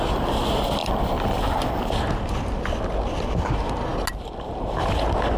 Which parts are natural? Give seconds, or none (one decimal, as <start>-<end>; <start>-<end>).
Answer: 0.0-0.8; 1.6-5.4